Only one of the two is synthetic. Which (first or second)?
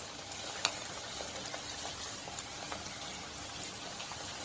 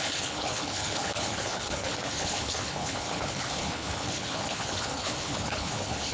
second